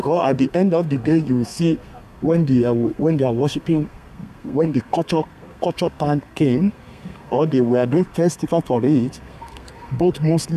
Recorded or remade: remade